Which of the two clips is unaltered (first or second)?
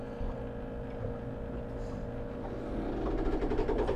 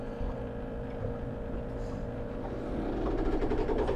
first